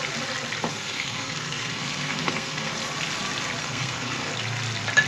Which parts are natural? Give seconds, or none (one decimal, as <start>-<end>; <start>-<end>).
0.0-0.7; 2.7-3.6; 4.3-5.1